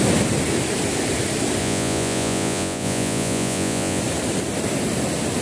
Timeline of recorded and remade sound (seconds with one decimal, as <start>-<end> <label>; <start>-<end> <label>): 0.0-1.6 recorded; 1.6-4.0 remade; 4.0-5.4 recorded